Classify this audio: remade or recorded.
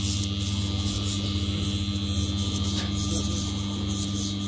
recorded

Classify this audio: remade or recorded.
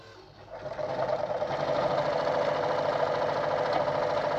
recorded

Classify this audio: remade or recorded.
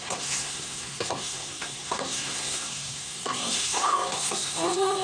remade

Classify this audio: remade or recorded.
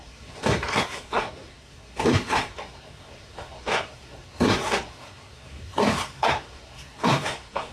remade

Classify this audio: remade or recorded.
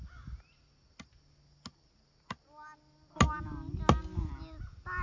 recorded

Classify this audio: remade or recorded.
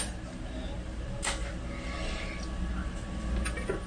recorded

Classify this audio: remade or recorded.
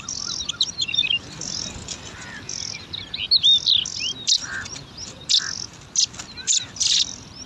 recorded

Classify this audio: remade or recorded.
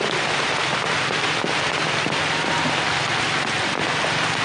recorded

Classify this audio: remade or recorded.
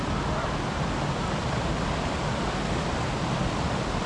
recorded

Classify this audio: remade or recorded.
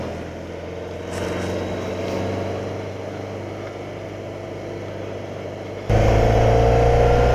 recorded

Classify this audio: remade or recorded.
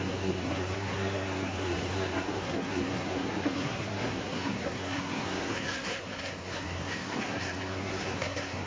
remade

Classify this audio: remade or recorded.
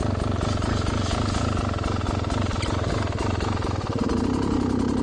recorded